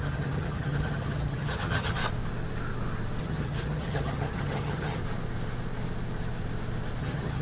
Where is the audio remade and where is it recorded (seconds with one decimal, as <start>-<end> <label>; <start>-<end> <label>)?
0.0-2.0 remade; 2.0-3.2 recorded; 3.2-5.0 remade; 5.0-7.0 recorded; 7.0-7.4 remade